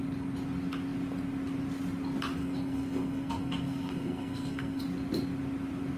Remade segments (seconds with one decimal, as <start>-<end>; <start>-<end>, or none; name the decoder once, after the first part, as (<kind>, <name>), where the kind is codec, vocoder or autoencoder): 2.4-4.8 (codec, SNAC)